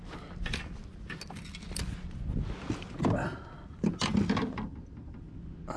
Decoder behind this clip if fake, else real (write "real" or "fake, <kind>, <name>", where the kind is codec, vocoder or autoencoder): real